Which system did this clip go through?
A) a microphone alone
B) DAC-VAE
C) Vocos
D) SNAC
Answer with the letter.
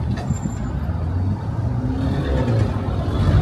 A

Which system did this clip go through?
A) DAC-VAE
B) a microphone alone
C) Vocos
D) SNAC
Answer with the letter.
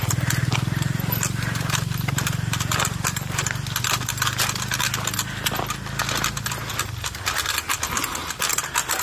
B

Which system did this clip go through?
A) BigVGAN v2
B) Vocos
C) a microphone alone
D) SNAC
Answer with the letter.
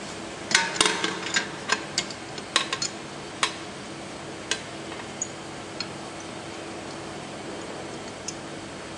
C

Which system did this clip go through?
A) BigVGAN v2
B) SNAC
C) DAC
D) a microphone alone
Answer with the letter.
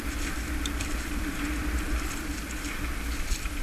A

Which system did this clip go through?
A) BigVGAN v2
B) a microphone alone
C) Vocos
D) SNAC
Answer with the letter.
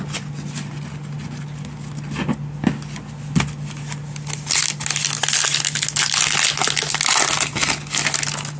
B